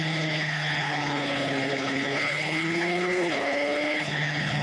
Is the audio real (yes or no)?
no